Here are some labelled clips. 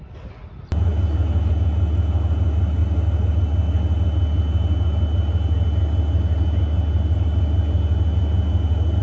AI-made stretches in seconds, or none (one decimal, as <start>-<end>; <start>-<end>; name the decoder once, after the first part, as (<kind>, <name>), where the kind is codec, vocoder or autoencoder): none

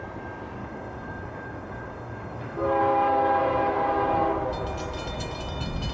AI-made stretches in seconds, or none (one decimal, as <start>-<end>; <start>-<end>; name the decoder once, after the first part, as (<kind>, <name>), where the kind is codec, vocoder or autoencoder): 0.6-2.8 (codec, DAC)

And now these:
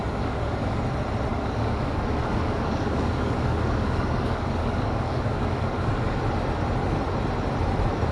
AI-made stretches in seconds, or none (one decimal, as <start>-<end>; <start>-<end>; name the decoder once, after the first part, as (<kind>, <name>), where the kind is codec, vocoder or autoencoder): 0.0-0.8 (codec, DAC); 1.3-6.2

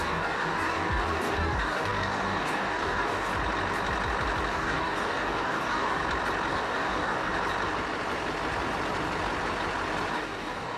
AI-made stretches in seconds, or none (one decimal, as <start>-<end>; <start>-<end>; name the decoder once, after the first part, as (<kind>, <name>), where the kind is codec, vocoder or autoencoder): 0.0-3.3 (codec, DAC); 4.5-6.0; 6.5-7.3; 10.1-10.8